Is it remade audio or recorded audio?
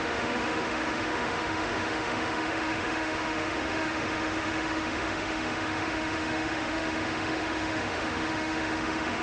remade